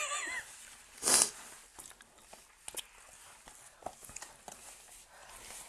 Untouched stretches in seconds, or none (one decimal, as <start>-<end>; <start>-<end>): 0.0-5.7

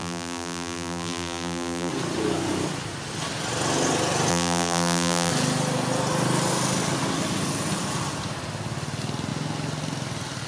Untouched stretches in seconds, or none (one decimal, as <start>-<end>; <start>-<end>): 1.9-4.3; 5.3-10.5

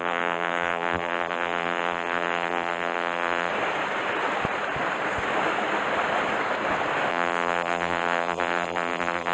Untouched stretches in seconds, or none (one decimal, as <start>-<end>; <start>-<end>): 3.5-7.1